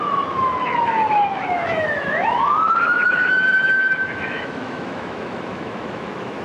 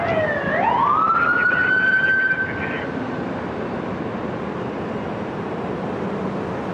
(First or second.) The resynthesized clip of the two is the first